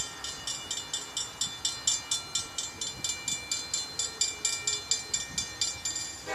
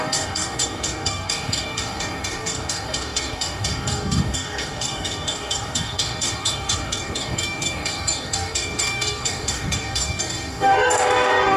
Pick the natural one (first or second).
first